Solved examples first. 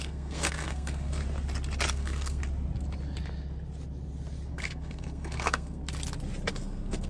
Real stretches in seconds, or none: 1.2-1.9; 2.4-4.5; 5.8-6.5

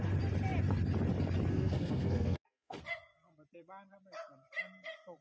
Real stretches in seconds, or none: 0.0-1.5; 2.8-5.2